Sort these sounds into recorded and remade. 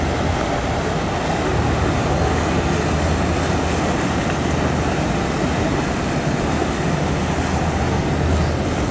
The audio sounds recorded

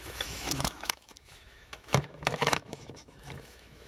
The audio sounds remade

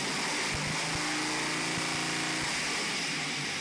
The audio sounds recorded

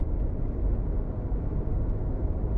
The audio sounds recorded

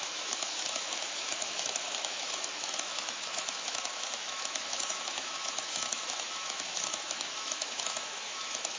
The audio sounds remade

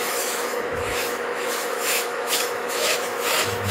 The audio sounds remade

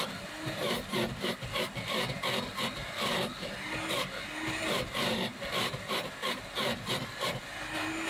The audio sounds recorded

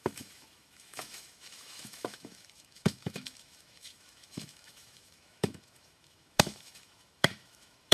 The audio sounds remade